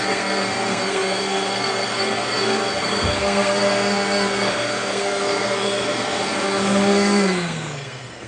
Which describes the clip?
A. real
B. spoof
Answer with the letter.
B